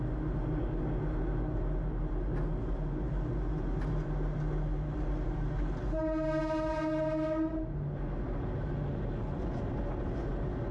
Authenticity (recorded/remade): recorded